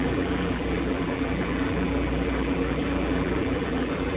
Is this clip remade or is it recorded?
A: remade